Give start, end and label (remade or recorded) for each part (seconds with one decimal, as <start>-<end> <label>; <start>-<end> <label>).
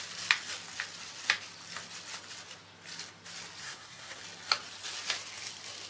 0.0-3.6 recorded; 3.6-4.2 remade; 4.2-5.9 recorded